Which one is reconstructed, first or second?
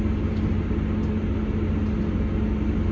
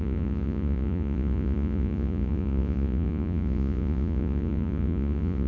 second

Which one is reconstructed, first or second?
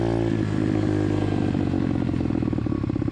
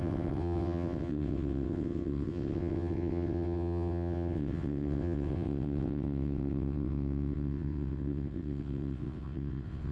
second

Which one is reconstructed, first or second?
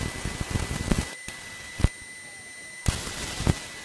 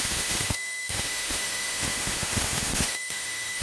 second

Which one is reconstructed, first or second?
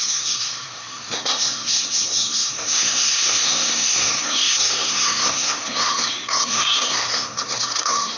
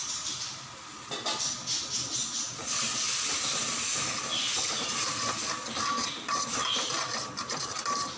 first